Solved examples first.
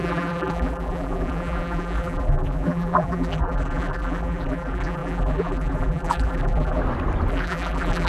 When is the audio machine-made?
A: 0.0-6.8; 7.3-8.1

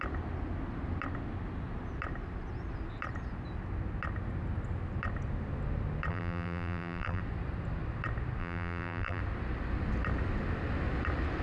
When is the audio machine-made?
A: 6.1-7.2; 8.4-9.2